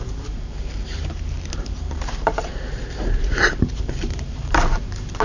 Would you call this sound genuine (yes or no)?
no